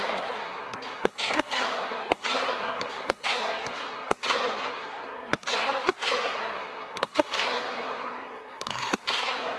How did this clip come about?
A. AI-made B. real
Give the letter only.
A